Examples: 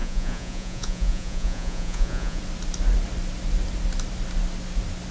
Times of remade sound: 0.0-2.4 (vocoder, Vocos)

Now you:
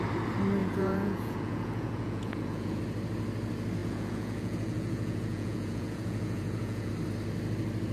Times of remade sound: 0.6-2.8 (vocoder, Vocos); 3.8-6.9

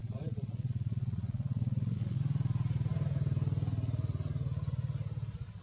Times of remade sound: 0.0-2.2 (vocoder, Vocos)

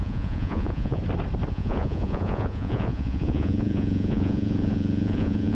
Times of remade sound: 0.0-1.0 (vocoder, Vocos); 1.5-5.5

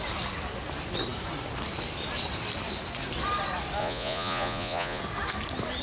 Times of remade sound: 3.8-5.0 (vocoder, Vocos)

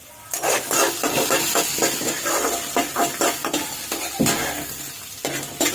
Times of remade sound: none